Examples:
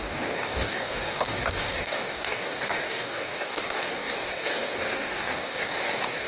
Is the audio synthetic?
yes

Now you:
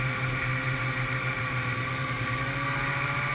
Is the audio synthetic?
yes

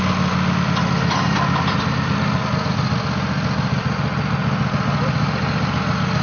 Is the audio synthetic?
no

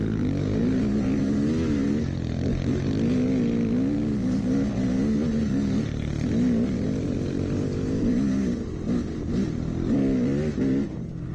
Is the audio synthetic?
no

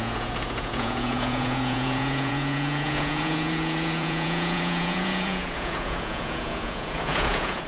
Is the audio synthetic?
yes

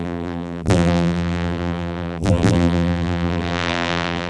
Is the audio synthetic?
yes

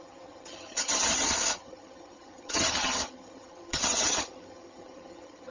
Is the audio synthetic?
yes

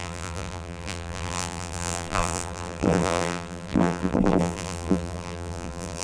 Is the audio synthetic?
yes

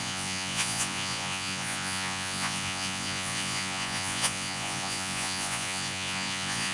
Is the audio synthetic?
yes